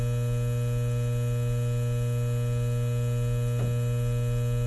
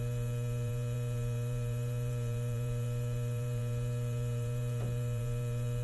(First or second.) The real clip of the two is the first